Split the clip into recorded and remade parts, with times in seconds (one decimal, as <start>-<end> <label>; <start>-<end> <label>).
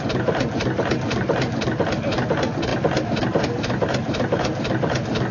0.0-5.3 recorded